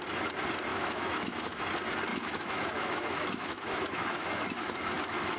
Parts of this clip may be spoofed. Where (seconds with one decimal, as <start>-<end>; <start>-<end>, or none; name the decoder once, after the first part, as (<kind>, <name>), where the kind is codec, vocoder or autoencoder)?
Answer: 0.7-1.6 (autoencoder, DAC-VAE); 2.1-5.4